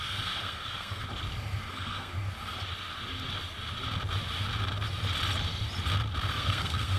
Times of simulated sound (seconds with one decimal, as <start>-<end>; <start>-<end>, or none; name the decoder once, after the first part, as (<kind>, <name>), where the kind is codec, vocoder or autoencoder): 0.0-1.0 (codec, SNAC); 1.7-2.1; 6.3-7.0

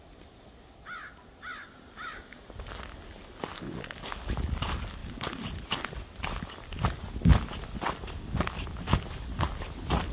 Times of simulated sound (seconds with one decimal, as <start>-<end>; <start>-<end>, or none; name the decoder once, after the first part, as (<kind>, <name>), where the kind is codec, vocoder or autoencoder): none

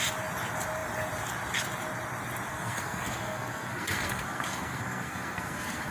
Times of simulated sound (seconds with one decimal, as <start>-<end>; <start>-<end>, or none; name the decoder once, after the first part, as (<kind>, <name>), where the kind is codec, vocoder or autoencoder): 2.5-5.9 (codec, SNAC)

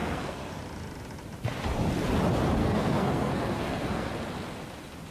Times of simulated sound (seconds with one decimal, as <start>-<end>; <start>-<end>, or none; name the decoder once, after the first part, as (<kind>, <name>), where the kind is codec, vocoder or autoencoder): 0.0-0.6 (codec, SNAC); 2.6-4.1